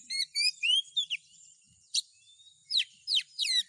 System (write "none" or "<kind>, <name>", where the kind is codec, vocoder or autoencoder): vocoder, BigVGAN v2